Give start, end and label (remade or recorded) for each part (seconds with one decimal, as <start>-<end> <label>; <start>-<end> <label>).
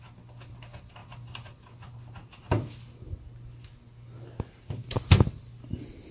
0.0-6.1 recorded